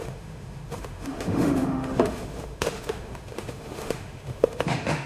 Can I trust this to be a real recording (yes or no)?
no